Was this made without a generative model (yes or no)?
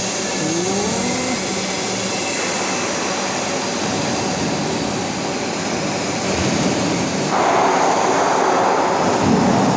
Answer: yes